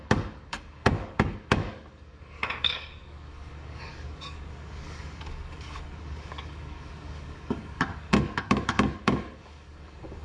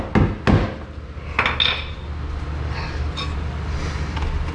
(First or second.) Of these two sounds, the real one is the second